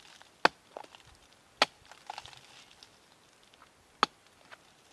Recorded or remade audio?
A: recorded